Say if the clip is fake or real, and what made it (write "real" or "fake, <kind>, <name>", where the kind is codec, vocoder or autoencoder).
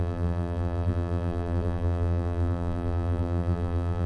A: fake, vocoder, BigVGAN v2